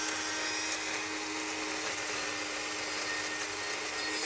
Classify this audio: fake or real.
real